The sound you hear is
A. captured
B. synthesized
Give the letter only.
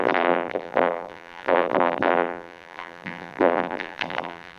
B